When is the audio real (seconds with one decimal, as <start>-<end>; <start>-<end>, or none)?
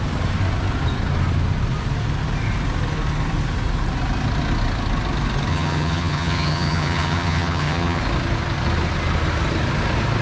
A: 0.0-5.5; 8.0-10.2